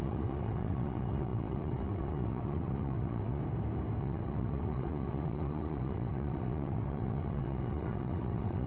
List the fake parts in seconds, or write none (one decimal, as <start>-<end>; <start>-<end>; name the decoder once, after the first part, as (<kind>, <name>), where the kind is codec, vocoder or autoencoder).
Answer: 0.0-3.4 (vocoder, WaveNeXt); 4.0-8.7